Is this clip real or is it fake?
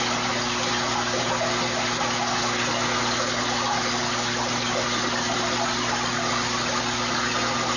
real